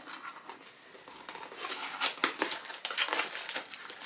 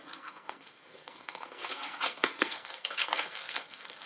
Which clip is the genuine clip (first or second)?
first